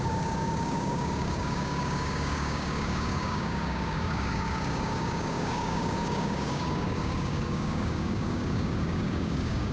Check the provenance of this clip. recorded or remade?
remade